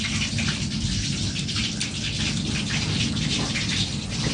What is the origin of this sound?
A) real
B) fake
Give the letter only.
A